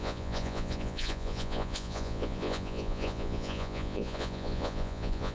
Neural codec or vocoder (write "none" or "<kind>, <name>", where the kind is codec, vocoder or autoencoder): vocoder, Vocos